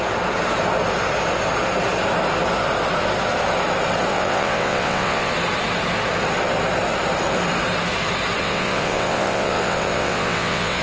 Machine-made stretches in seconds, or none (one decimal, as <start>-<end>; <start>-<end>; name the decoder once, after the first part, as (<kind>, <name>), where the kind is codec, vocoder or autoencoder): 4.1-5.3 (vocoder, WaveNeXt); 8.4-10.8